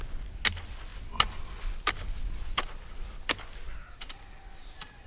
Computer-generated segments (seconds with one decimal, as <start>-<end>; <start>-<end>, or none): none